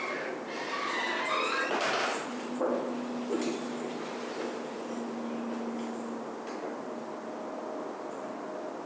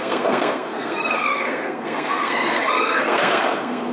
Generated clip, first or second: second